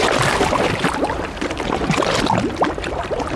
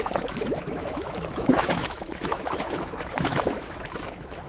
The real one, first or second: first